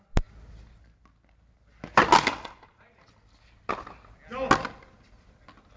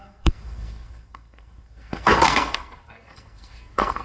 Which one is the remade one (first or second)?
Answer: second